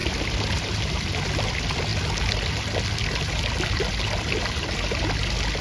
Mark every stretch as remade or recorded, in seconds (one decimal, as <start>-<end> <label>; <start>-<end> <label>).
0.0-1.5 remade; 1.5-5.6 recorded